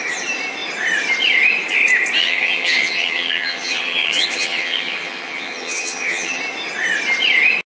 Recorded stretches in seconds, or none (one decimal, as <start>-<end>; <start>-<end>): 0.0-2.2; 6.4-7.7